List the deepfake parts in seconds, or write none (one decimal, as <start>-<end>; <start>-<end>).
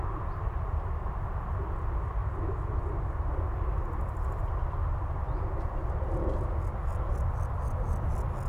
none